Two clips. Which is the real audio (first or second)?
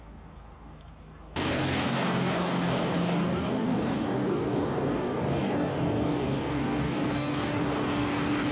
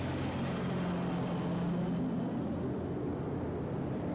second